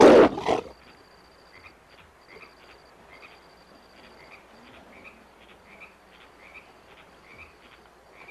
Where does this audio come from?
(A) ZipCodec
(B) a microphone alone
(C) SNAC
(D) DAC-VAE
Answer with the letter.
B